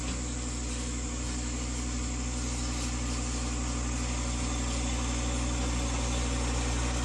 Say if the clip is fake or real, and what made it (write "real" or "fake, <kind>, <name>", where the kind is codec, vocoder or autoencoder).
real